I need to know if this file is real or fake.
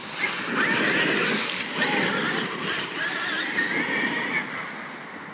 real